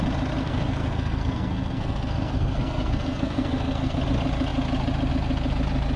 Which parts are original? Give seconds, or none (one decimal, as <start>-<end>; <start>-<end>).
0.0-0.4; 4.0-6.0